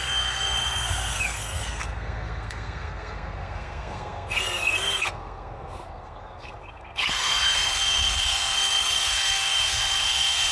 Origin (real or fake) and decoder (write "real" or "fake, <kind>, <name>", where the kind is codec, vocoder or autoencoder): fake, codec, SNAC